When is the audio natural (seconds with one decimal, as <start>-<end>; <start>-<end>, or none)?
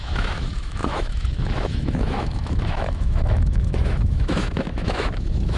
none